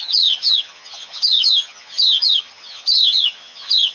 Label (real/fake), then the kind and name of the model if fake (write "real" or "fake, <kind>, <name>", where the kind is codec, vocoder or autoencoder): fake, vocoder, HiFi-GAN